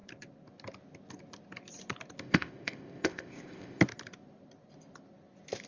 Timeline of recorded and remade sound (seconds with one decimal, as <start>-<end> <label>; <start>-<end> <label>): 0.0-2.2 recorded; 2.2-3.8 remade; 3.8-5.7 recorded